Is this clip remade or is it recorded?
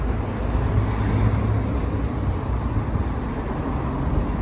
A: recorded